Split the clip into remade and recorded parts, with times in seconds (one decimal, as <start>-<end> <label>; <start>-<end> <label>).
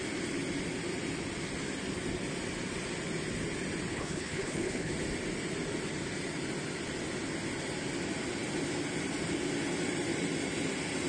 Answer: 0.0-3.9 recorded; 3.9-4.9 remade; 4.9-11.1 recorded